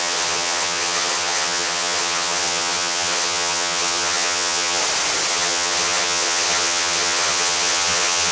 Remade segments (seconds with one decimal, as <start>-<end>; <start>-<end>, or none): 0.0-4.8; 5.3-8.3